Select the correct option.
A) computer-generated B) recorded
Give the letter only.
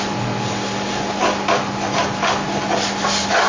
B